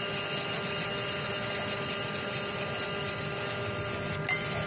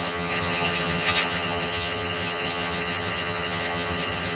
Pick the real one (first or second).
first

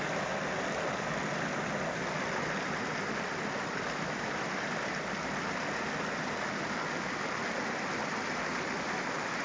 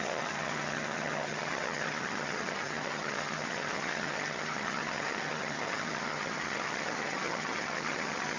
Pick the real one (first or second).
first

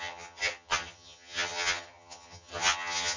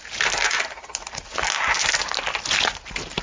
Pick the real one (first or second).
second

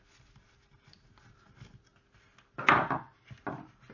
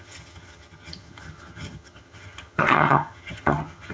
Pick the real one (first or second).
first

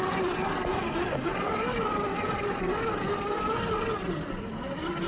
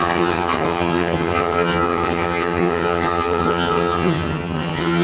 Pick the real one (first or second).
first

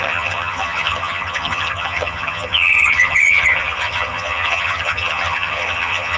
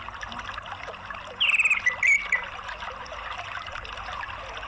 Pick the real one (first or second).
second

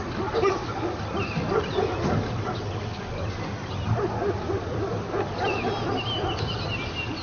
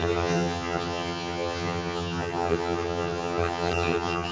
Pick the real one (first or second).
first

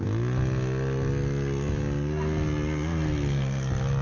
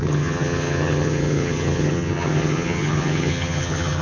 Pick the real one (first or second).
first